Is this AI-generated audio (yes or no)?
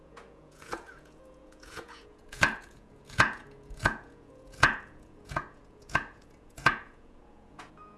yes